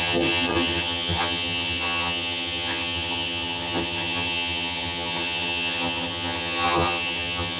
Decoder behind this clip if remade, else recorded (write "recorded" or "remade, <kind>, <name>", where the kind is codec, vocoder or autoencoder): remade, vocoder, HiFi-GAN